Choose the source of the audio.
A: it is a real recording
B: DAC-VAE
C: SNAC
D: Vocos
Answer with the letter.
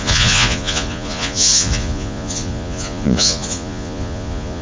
D